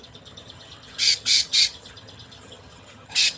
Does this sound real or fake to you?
fake